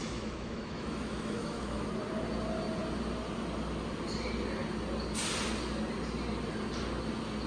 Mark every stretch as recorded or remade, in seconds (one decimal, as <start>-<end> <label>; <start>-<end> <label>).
0.0-1.9 remade; 1.9-7.5 recorded